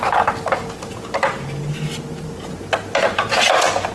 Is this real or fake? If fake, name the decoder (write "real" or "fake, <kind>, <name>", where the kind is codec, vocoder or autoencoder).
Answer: real